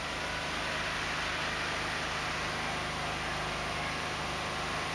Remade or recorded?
recorded